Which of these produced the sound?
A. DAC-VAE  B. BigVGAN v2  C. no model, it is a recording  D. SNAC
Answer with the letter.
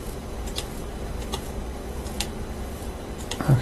C